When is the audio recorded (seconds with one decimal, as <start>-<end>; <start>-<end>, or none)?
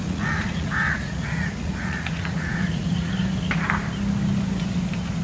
3.1-5.2